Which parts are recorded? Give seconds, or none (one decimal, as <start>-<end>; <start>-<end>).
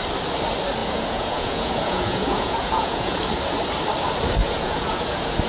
0.0-0.8; 3.2-4.4